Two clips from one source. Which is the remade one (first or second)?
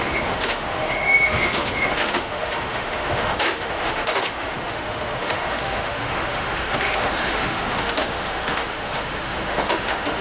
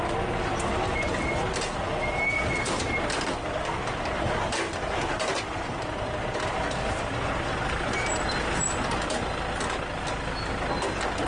first